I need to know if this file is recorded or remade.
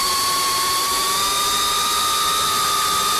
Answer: recorded